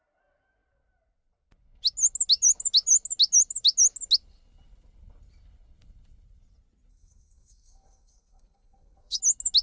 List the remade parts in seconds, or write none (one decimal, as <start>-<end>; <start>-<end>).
6.9-9.2